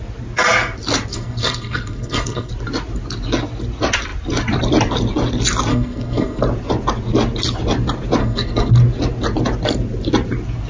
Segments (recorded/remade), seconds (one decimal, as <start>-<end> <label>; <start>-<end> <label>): 0.0-1.1 recorded; 1.1-2.5 remade; 2.5-5.7 recorded; 5.7-6.4 remade; 6.4-8.2 recorded; 8.2-8.7 remade; 8.7-10.7 recorded